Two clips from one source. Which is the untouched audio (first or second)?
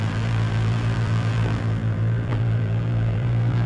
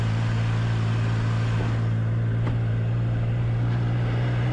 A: second